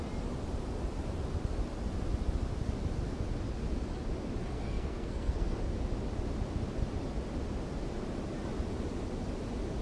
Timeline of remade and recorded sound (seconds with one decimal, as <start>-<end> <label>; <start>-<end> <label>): 0.0-4.4 recorded; 4.4-5.6 remade; 5.6-9.8 recorded